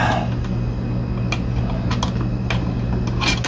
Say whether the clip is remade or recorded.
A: recorded